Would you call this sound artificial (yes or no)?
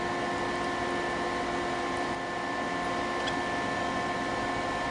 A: no